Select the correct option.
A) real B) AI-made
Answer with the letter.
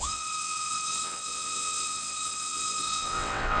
B